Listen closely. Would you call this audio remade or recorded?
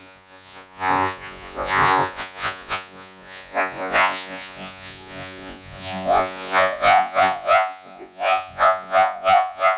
remade